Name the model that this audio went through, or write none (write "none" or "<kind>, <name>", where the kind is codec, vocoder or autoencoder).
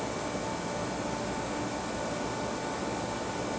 none